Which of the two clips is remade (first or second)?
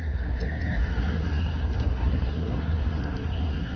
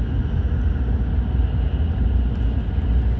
first